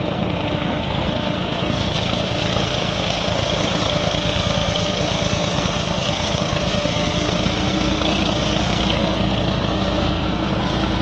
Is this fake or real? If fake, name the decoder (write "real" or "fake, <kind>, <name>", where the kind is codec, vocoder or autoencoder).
fake, codec, SNAC